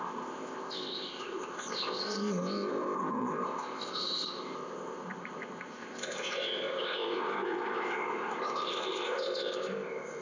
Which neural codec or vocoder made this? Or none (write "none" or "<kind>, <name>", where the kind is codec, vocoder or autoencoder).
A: codec, ZipCodec